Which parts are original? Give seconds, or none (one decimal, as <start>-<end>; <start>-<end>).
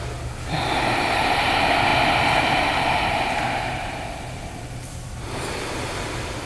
0.0-6.5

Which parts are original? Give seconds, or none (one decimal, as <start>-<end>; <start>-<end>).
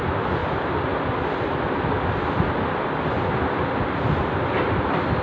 0.0-5.2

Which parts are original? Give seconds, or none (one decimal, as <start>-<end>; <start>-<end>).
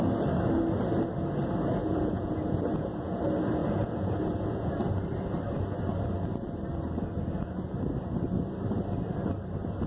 0.0-1.8; 3.2-3.6; 4.7-9.9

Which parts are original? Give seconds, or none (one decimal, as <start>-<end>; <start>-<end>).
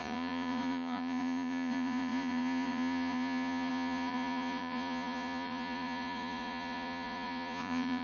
none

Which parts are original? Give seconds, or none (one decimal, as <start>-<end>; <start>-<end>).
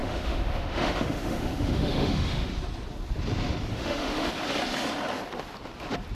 2.5-3.7; 4.3-6.1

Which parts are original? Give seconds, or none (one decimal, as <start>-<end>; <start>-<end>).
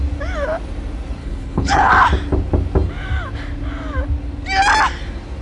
0.0-1.2; 1.9-5.4